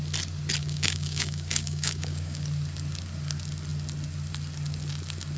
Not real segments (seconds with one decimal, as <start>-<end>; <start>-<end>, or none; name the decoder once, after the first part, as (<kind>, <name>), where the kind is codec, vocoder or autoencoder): 0.6-2.4 (codec, DAC)